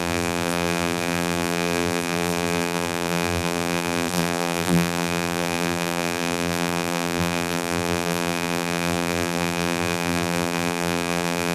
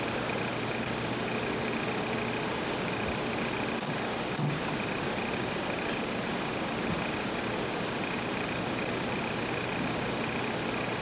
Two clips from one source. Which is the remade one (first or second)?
first